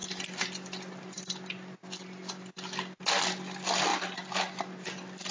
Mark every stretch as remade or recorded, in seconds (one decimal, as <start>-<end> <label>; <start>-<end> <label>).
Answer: 0.0-5.3 recorded